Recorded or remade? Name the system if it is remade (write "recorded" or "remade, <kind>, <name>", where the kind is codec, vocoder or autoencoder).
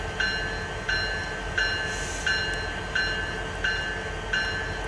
recorded